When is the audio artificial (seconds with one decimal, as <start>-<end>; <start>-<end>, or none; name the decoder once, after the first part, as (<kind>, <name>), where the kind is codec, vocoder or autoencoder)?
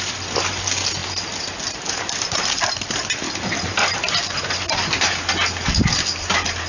none